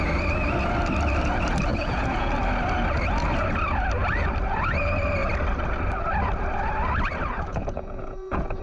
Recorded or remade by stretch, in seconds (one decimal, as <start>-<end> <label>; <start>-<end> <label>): 0.0-1.7 recorded; 1.7-2.3 remade; 2.3-7.5 recorded; 7.5-8.6 remade